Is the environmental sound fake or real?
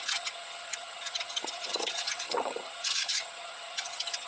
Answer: fake